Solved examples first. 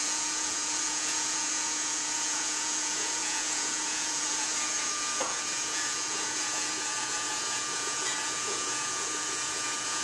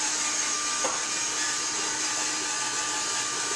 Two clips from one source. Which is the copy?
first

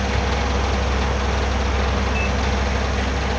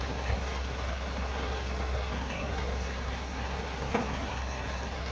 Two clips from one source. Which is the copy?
second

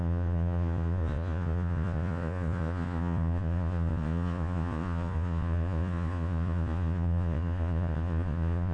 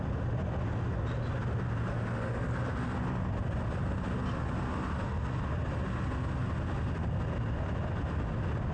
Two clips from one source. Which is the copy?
first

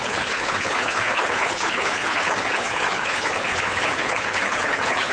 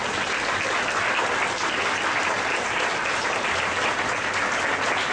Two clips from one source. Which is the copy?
first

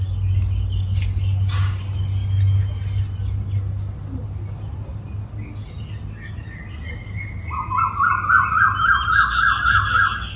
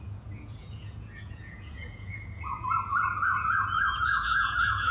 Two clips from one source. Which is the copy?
second